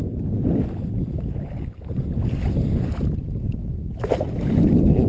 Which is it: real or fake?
real